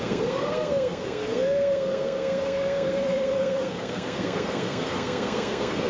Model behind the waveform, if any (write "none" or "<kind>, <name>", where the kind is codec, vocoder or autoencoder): codec, SNAC